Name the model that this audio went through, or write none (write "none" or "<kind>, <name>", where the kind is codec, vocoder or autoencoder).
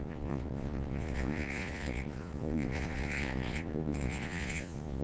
vocoder, Vocos